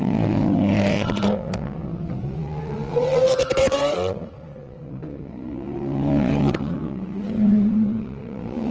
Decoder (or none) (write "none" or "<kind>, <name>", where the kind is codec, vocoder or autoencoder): vocoder, WaveNeXt